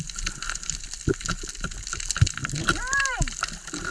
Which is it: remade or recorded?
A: recorded